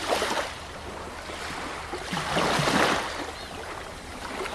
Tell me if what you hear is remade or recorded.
recorded